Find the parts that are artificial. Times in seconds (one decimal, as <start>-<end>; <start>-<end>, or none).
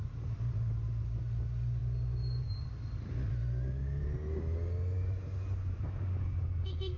none